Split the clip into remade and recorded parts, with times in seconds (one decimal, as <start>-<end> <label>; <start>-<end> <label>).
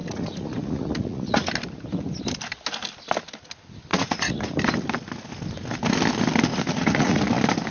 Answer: 0.0-1.5 remade; 1.5-3.9 recorded; 3.9-4.6 remade; 4.6-6.5 recorded; 6.5-7.2 remade; 7.2-7.7 recorded